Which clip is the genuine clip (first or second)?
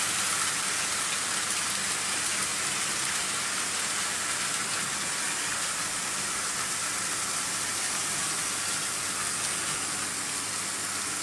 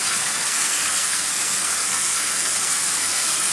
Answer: first